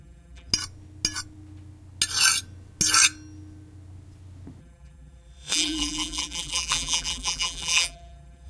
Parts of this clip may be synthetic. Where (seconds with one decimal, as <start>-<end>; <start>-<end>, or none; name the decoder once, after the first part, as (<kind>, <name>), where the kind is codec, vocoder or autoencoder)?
0.0-0.5 (vocoder, BigVGAN v2); 4.6-8.5